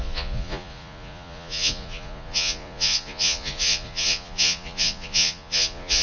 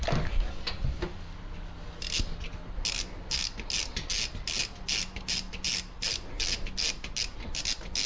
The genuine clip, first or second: second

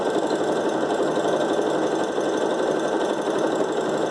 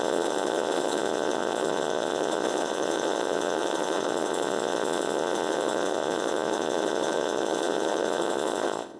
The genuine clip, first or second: first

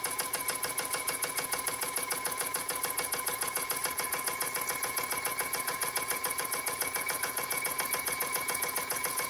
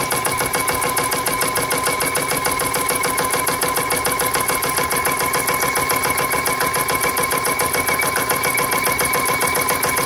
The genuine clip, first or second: second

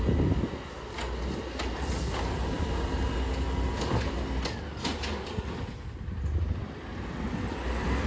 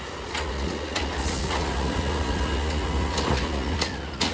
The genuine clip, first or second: first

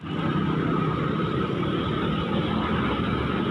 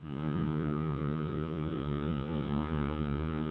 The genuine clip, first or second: first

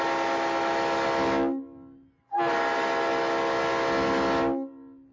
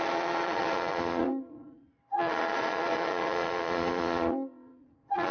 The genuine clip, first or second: first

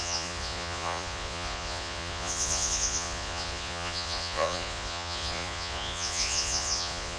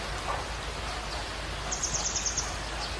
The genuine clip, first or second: second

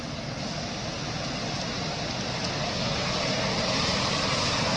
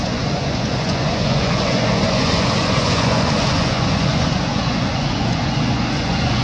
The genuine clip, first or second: first